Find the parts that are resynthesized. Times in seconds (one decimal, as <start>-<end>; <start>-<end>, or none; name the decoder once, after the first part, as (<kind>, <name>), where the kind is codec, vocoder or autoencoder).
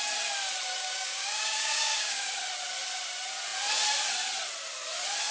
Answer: 0.8-2.3 (codec, DAC)